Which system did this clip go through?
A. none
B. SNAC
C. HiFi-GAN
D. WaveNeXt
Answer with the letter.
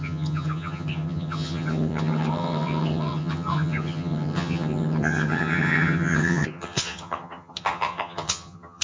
C